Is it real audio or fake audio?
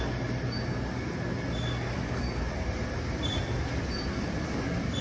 real